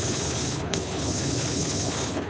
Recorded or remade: remade